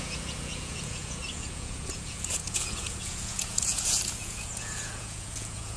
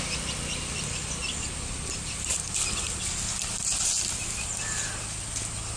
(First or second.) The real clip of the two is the second